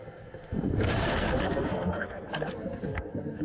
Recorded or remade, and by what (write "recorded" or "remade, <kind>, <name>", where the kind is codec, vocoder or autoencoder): remade, codec, SNAC